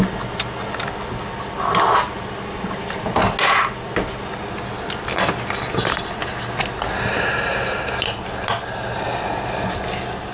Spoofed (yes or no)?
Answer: no